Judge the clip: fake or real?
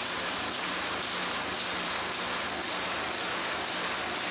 real